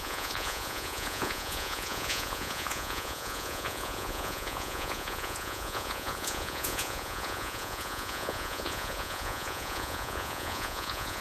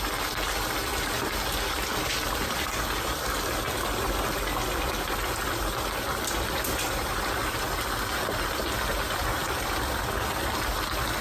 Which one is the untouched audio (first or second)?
second